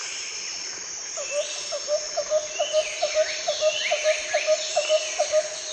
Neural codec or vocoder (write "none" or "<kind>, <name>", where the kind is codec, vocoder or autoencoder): none